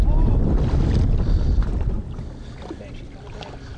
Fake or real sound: real